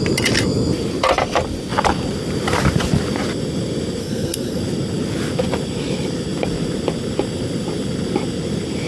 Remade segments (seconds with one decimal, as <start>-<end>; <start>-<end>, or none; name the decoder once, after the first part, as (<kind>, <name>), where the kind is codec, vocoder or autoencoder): 4.0-4.6 (codec, SNAC)